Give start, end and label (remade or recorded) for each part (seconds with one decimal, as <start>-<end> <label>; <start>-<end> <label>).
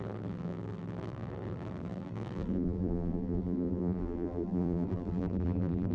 0.0-5.9 remade